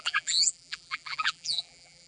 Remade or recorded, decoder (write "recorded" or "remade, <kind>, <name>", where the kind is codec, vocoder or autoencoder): remade, vocoder, BigVGAN v2